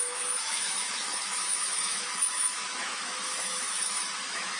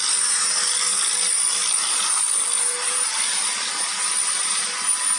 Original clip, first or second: second